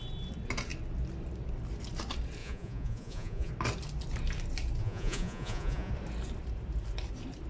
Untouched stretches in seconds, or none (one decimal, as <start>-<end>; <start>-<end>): 0.0-2.4; 3.5-4.8; 5.9-7.5